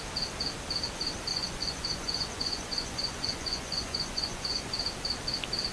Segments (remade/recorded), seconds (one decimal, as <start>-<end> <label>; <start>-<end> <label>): 0.0-1.3 recorded; 1.3-4.7 remade; 4.7-5.7 recorded